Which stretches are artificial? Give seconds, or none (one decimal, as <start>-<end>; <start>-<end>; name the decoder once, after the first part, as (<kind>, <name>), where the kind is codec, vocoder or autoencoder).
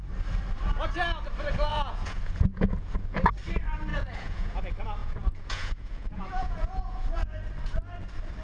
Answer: 1.7-3.2 (vocoder, Vocos); 3.9-4.6; 5.0-7.2